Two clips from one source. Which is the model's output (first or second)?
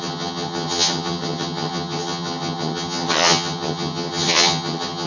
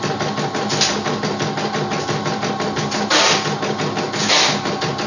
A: first